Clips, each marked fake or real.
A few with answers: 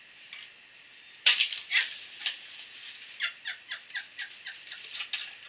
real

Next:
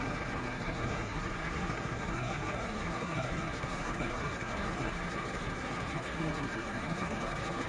fake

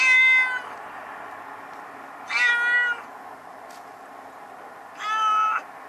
real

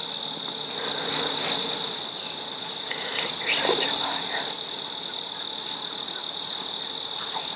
real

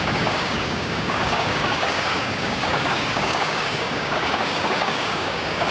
fake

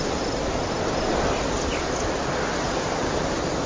real